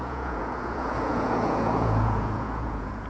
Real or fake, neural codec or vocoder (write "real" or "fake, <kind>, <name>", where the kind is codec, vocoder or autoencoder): fake, vocoder, Vocos